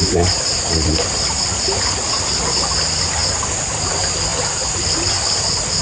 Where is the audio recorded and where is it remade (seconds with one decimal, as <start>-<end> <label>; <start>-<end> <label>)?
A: 0.0-5.8 recorded